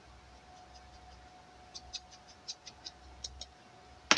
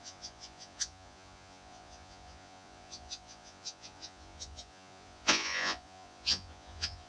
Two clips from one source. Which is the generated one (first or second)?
second